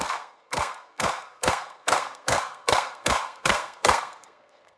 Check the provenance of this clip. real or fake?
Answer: fake